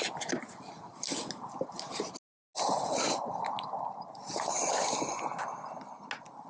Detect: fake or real real